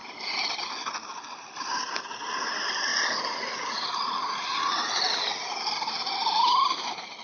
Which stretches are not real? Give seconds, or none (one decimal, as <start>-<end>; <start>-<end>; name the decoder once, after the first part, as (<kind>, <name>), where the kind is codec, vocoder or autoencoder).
none